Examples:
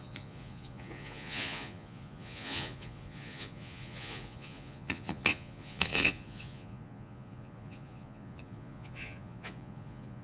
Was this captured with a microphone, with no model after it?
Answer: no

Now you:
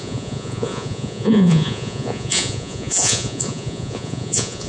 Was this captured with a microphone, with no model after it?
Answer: no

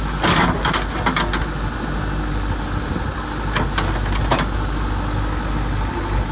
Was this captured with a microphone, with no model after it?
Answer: yes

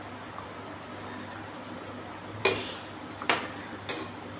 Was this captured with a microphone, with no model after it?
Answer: yes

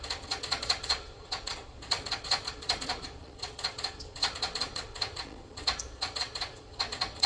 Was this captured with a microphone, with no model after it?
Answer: no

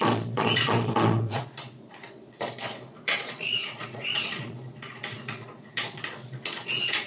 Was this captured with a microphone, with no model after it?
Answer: no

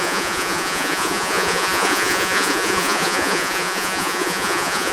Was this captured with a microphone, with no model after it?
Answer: no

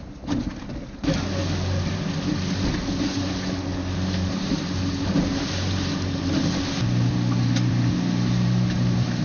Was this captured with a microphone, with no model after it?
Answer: yes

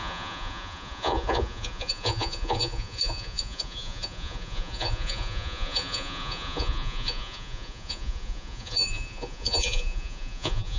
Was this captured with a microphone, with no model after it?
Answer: no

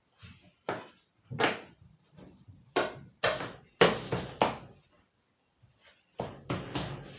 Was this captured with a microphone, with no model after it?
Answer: yes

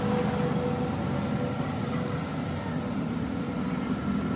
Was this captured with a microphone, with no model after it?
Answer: yes